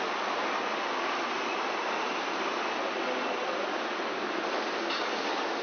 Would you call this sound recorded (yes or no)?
yes